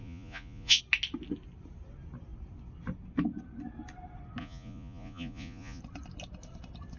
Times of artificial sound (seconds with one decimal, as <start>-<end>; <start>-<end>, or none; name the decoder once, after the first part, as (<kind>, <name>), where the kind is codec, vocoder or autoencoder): 0.0-0.8 (vocoder, Vocos); 4.4-5.8